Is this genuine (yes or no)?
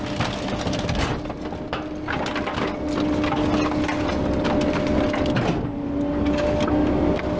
yes